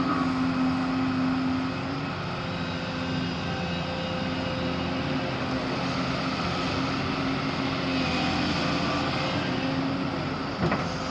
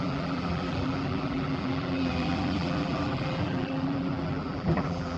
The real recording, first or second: first